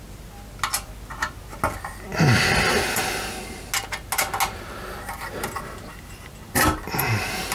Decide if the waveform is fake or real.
real